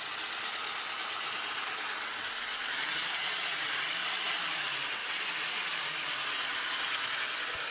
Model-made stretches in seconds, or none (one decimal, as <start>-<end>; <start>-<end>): 4.0-4.6; 5.0-6.1

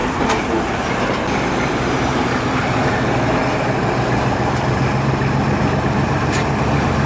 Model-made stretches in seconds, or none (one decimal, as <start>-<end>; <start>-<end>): 1.7-2.6

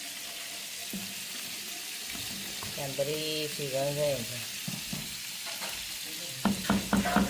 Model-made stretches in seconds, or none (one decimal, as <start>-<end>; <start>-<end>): 0.8-5.2

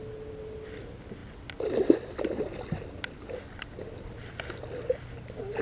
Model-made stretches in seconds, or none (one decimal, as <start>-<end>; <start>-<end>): none